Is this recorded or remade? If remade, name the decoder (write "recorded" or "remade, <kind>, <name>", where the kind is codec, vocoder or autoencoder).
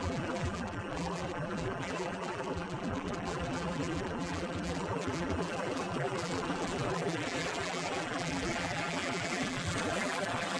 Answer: remade, vocoder, BigVGAN v2